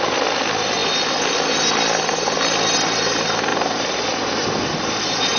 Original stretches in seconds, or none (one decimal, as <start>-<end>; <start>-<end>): 0.0-3.5; 4.1-5.4